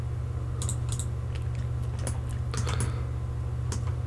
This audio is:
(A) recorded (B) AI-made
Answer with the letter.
A